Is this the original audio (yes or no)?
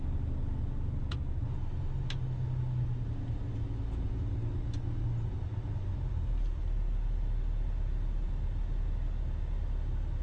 yes